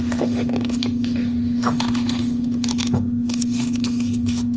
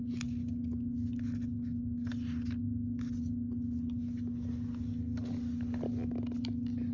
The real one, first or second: second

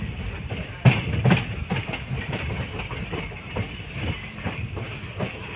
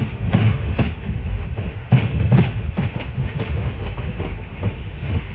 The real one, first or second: first